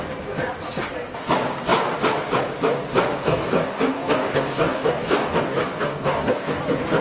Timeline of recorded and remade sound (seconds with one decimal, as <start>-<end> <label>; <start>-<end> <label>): 0.0-3.2 recorded; 3.2-6.6 remade; 6.6-7.0 recorded